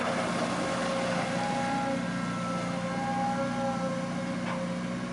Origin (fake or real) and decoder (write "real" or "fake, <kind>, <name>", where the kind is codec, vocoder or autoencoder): real